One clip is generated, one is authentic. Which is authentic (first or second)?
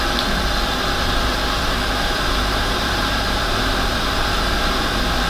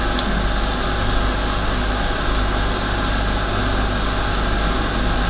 second